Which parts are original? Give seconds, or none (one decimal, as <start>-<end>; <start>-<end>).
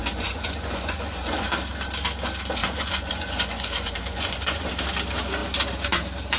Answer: 1.5-2.6; 4.7-6.4